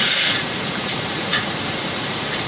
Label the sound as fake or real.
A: fake